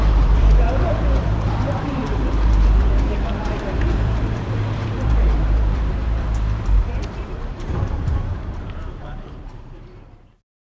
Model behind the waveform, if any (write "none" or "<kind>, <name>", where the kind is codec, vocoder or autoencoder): vocoder, BigVGAN v2